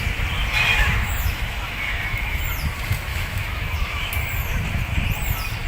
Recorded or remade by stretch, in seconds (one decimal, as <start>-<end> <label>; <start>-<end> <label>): 0.0-0.7 recorded; 0.7-2.4 remade; 2.4-3.1 recorded; 3.1-4.1 remade; 4.1-5.7 recorded